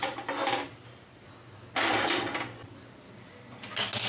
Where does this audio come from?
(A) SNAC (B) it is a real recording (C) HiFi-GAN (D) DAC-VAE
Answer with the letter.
B